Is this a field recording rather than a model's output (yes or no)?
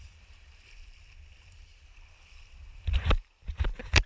no